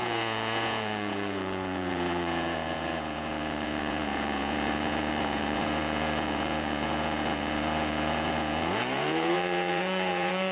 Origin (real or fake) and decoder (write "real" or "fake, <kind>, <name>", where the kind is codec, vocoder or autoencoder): fake, vocoder, Vocos